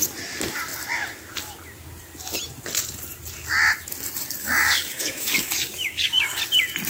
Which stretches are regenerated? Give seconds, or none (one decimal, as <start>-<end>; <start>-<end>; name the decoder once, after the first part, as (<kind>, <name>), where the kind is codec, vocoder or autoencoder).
4.4-6.4 (codec, DAC)